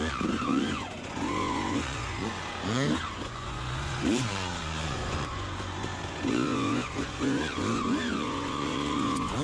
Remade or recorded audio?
remade